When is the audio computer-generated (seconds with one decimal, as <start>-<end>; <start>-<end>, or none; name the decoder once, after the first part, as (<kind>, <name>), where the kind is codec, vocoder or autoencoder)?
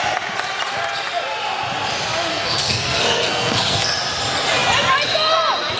2.3-3.9 (codec, SNAC)